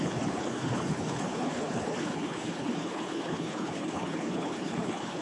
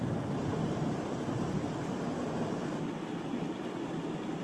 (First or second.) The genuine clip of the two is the second